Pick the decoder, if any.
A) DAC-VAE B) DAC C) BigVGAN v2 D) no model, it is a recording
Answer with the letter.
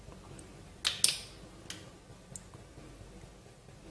D